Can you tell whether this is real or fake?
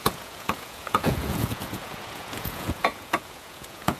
fake